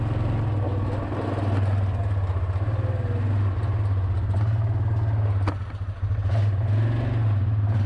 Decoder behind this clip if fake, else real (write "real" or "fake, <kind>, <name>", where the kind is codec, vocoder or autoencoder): real